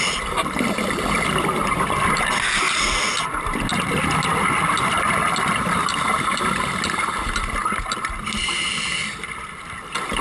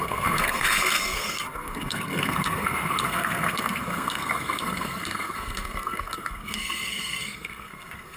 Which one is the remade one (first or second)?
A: second